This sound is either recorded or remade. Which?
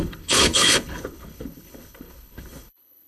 remade